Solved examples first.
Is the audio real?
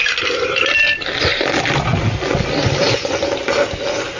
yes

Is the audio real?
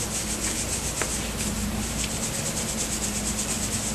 yes